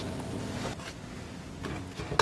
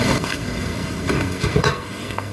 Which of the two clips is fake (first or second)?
second